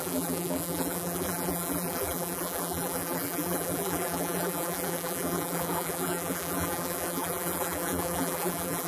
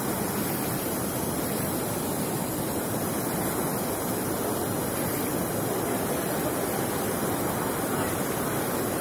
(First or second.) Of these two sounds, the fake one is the first